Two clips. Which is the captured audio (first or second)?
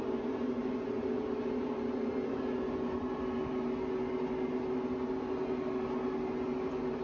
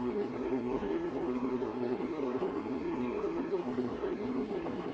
first